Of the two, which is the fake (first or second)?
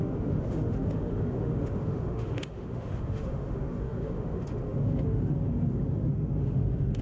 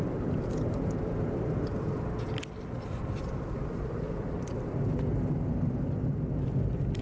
first